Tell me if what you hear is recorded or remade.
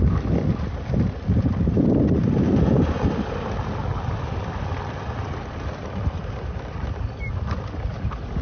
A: recorded